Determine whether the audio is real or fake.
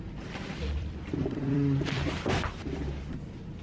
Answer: fake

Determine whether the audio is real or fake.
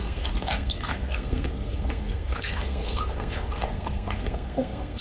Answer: fake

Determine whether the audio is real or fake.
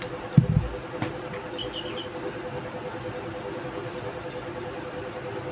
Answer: real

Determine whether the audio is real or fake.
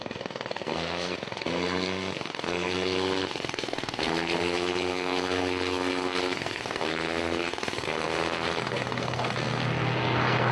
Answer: fake